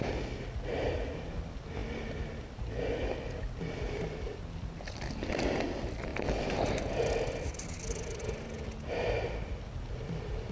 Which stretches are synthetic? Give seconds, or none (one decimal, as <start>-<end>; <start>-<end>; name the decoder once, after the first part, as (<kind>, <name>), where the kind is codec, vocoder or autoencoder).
6.1-7.3 (vocoder, BigVGAN v2)

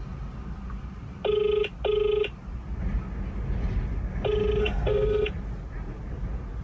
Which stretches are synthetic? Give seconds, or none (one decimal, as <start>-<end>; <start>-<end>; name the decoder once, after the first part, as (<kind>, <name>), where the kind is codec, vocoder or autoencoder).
4.6-5.3 (codec, SNAC)